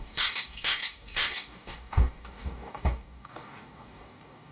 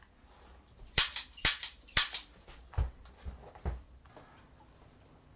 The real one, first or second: second